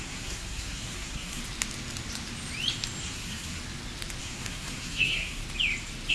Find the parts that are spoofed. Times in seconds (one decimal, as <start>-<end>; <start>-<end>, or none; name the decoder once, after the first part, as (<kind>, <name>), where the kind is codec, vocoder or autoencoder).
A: 0.0-1.4 (codec, SNAC); 3.0-3.6; 4.2-5.4